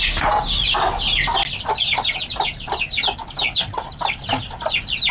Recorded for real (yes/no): yes